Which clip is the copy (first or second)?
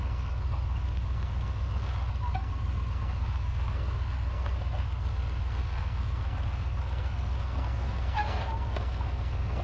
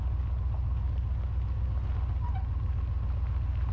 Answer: first